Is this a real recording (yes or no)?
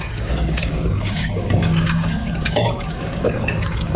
no